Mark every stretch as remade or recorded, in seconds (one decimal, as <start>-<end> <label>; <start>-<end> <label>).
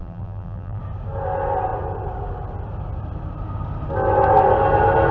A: 0.0-0.8 remade; 0.8-5.1 recorded